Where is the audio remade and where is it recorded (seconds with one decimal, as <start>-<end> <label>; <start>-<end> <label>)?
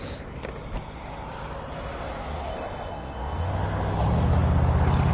0.0-2.5 recorded; 2.5-3.5 remade; 3.5-5.1 recorded